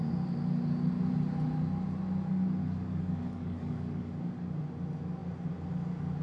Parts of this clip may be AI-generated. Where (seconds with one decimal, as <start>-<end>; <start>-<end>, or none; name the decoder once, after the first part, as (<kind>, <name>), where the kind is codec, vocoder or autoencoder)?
2.6-4.6 (codec, DAC)